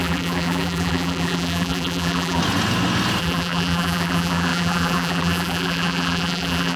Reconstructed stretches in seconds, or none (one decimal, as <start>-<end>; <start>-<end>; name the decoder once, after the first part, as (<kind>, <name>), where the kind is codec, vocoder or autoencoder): 0.0-2.4 (vocoder, BigVGAN v2); 3.2-6.8